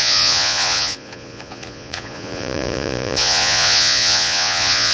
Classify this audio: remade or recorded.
remade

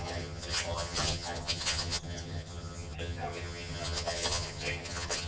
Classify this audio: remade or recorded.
remade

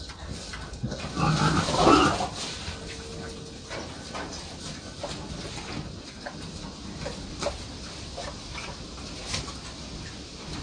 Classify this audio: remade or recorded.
recorded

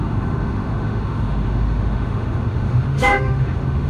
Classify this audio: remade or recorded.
remade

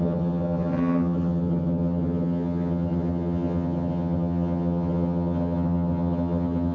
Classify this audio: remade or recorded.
remade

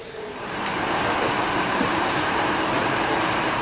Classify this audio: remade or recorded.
remade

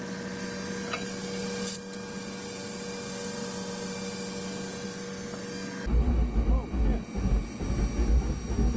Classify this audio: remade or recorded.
recorded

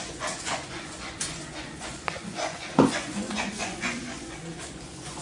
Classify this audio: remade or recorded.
remade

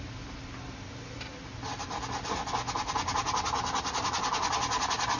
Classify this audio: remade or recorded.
recorded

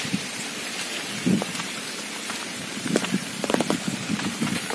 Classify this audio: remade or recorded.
remade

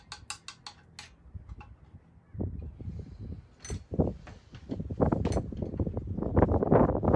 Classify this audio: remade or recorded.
recorded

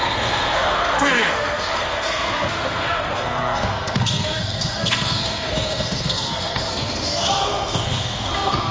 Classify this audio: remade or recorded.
remade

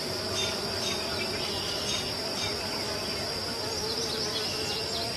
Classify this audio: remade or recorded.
recorded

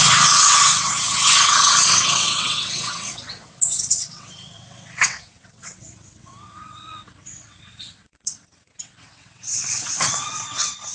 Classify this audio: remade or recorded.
remade